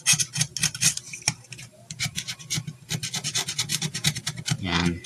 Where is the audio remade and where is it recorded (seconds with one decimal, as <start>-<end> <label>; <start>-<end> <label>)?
0.0-0.8 recorded; 0.8-2.8 remade; 2.8-3.7 recorded; 3.7-5.1 remade